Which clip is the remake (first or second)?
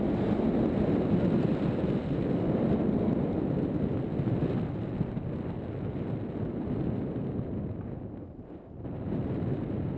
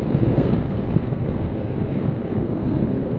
second